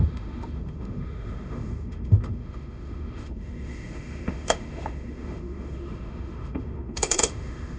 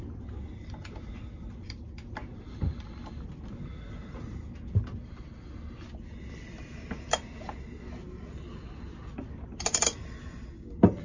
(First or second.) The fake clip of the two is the first